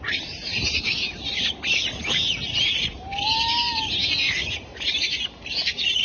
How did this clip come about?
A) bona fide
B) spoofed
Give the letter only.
B